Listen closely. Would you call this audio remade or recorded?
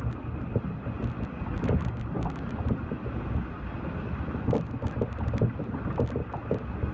recorded